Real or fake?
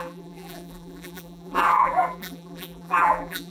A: fake